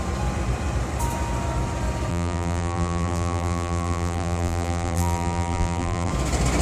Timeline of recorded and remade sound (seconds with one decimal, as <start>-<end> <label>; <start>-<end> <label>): 0.0-2.1 recorded; 2.1-6.1 remade; 6.1-6.6 recorded